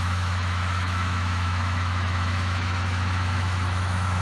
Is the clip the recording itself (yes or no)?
no